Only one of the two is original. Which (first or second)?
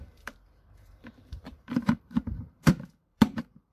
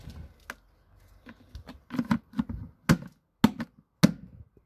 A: second